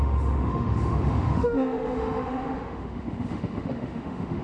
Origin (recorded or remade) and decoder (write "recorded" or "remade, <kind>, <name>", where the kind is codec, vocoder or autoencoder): remade, autoencoder, DAC-VAE